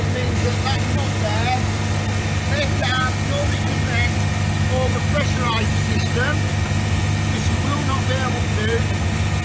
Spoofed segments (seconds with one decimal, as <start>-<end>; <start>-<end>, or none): none